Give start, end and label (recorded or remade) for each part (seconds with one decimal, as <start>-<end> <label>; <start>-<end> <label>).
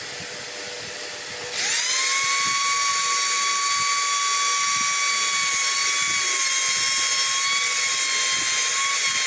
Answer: 0.0-9.3 recorded